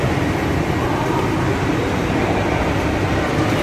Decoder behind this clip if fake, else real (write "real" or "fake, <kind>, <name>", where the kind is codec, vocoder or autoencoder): real